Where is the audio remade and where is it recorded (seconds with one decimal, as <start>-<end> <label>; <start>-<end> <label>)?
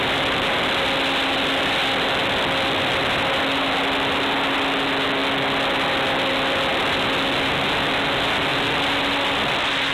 0.0-9.9 recorded